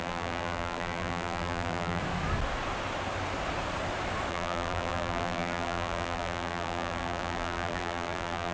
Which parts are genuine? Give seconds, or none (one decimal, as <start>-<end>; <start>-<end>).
2.0-4.3